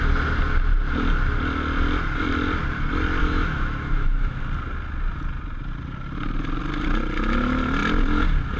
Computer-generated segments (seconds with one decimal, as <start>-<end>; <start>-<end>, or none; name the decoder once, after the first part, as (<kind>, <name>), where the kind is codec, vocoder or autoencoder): 3.2-4.4 (autoencoder, DAC-VAE)